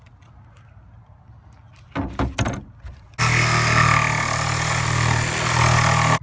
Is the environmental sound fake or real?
real